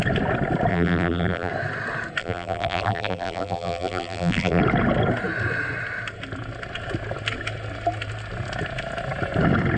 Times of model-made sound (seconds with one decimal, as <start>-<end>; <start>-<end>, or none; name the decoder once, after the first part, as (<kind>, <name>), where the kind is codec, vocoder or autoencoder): 0.7-1.5 (vocoder, BigVGAN v2); 2.2-4.6